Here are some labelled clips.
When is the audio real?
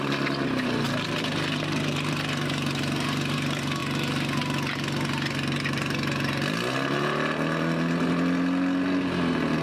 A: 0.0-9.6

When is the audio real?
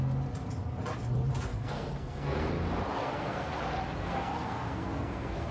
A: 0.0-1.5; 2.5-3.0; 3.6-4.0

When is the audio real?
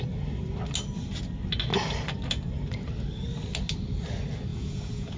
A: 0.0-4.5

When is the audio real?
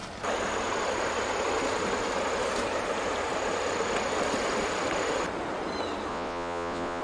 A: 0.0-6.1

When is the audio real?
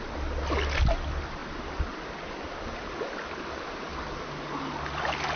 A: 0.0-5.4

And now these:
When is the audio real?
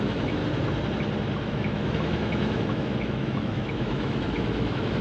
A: 0.4-1.5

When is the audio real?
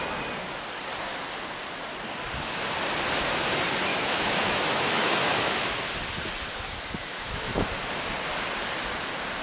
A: 0.0-3.9; 5.6-7.0; 7.5-9.4